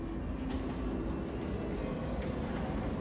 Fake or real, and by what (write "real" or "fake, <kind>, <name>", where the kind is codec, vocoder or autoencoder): real